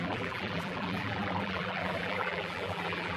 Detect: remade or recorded remade